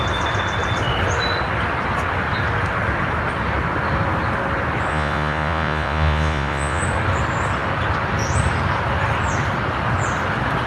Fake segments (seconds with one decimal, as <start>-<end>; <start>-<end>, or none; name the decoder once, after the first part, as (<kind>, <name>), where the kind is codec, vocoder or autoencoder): 4.9-6.8 (vocoder, Vocos)